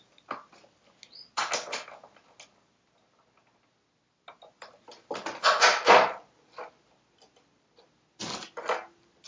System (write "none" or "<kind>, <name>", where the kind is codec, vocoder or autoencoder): none